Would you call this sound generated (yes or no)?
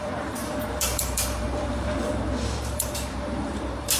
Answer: yes